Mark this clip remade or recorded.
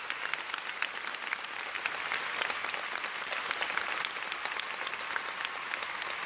recorded